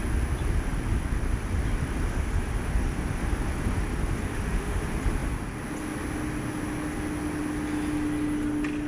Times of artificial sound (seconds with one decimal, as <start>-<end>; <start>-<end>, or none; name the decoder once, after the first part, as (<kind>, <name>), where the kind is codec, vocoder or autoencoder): 2.1-2.8 (autoencoder, DAC-VAE); 4.3-4.8